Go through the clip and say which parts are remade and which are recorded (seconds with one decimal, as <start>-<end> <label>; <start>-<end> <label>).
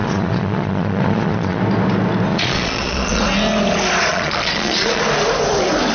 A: 0.0-1.6 remade; 1.6-2.3 recorded; 2.3-3.2 remade; 3.2-4.1 recorded; 4.1-5.0 remade; 5.0-5.9 recorded